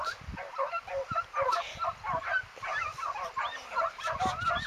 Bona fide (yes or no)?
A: yes